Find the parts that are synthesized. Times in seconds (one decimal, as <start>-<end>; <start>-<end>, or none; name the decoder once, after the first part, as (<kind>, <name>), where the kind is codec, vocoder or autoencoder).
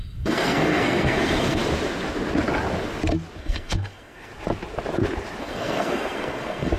0.0-1.6 (codec, SNAC); 3.4-4.3; 5.4-6.8